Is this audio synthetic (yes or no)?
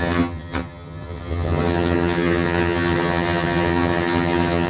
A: yes